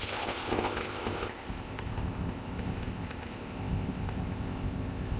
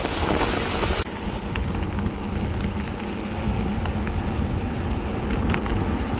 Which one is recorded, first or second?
second